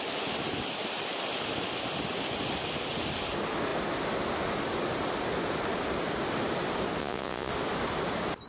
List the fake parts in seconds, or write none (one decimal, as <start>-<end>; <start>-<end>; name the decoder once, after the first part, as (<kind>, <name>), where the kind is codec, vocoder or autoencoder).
7.0-7.5 (vocoder, Vocos)